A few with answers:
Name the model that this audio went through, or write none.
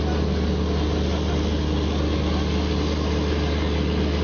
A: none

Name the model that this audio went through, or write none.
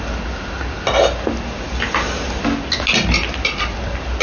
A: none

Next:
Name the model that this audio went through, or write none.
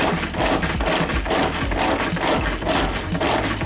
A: none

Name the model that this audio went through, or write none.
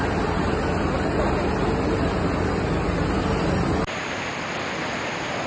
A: none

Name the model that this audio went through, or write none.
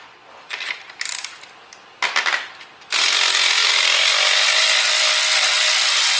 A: none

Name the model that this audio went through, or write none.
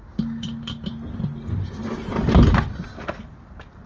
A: none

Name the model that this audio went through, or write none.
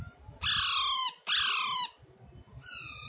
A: none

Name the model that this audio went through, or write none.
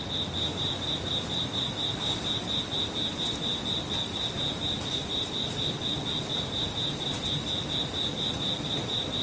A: none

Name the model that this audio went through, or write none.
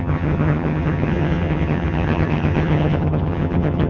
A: vocoder, HiFi-GAN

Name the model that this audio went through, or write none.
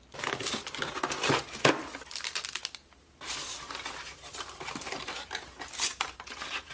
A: none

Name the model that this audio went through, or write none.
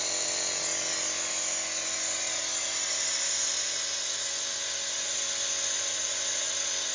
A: none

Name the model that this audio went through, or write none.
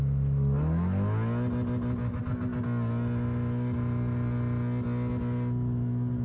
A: none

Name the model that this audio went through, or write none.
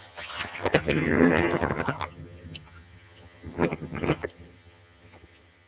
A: vocoder, HiFi-GAN